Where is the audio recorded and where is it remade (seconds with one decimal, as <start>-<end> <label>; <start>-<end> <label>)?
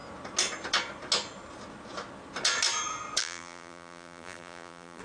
0.0-3.2 recorded; 3.2-5.0 remade